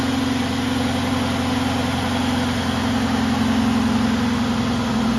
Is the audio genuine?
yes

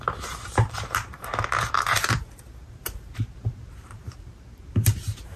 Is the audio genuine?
no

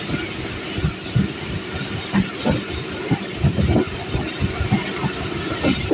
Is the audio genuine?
yes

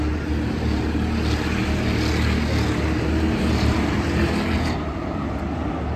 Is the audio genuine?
yes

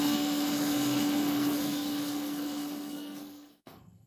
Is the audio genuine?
no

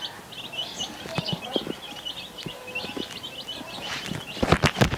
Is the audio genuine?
yes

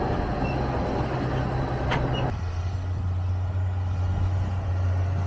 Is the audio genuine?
yes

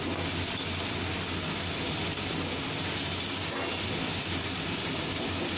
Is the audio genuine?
yes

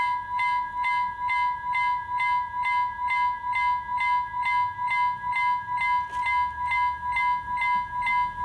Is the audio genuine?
yes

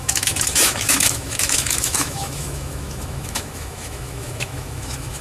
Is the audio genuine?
no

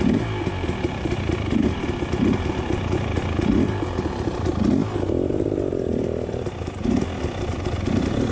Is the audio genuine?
yes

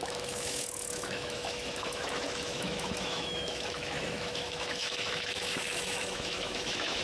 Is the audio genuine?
no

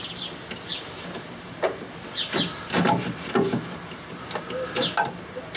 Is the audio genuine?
yes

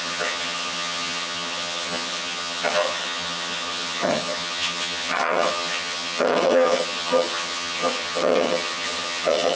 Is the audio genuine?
no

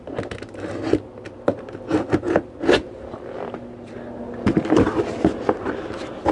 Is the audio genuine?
yes